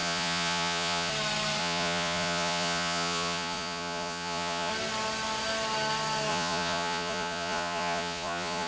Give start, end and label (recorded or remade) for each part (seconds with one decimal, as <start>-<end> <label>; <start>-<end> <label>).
0.0-1.1 remade; 1.1-1.6 recorded; 1.6-4.7 remade; 4.7-6.3 recorded; 6.3-8.7 remade